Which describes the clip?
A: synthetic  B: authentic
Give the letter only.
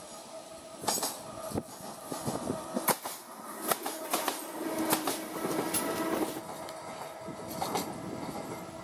B